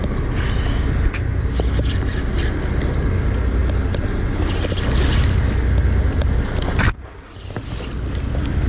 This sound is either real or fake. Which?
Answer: real